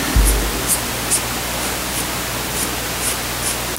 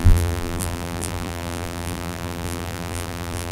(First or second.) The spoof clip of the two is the second